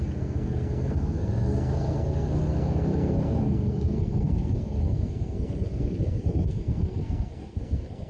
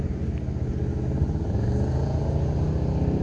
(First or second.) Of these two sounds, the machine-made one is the first